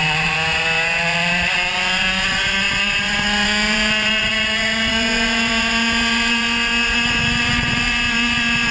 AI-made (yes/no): yes